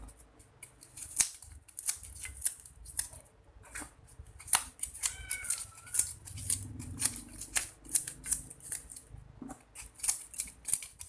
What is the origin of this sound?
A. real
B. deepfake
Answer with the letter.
A